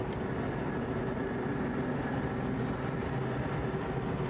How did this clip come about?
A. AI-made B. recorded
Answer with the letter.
B